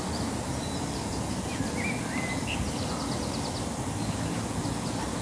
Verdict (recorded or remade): recorded